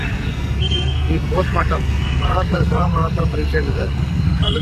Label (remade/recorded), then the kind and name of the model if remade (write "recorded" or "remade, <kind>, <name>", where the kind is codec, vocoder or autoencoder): remade, codec, SNAC